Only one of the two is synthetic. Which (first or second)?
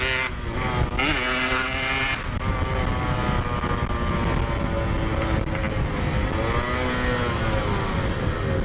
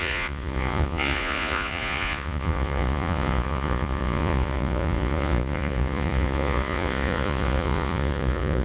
second